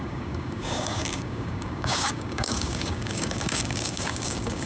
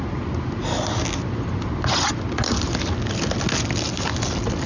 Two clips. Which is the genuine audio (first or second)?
second